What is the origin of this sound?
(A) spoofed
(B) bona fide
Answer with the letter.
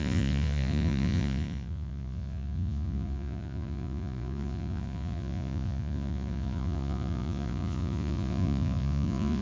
A